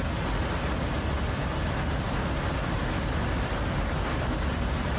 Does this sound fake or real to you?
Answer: real